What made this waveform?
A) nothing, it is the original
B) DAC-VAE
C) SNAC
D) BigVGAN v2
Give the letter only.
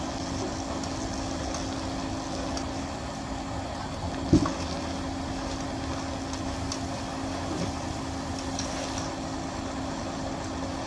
A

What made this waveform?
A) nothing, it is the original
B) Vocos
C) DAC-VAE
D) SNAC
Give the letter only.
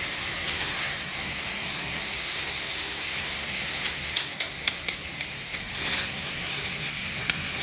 D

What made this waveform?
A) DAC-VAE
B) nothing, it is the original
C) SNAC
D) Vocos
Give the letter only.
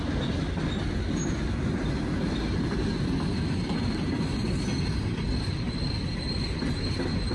B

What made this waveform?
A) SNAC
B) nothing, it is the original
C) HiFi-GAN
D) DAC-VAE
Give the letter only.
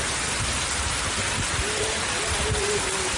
B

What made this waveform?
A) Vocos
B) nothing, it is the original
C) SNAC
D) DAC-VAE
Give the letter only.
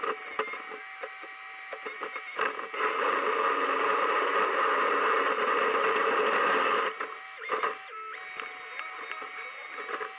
B